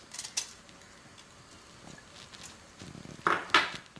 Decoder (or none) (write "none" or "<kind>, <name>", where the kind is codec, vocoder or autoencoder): none